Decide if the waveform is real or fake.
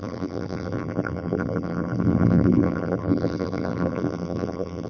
fake